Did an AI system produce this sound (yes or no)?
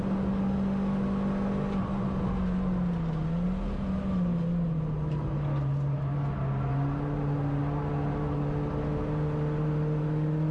no